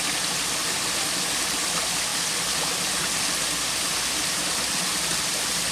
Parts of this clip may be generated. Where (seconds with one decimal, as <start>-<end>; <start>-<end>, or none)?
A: none